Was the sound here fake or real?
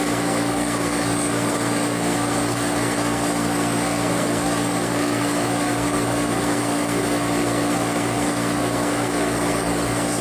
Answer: fake